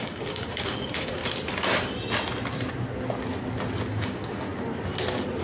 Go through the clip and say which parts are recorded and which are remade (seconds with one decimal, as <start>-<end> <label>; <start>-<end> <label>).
0.0-1.2 remade; 1.2-3.9 recorded; 3.9-4.5 remade; 4.5-5.4 recorded